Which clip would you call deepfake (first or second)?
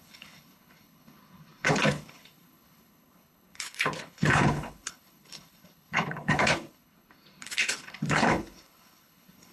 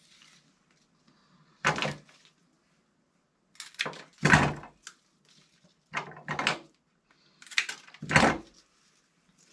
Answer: first